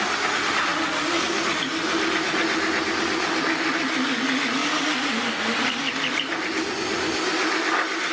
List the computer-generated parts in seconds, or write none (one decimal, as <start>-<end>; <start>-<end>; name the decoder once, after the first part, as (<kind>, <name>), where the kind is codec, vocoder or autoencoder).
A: 4.6-6.3 (vocoder, BigVGAN v2)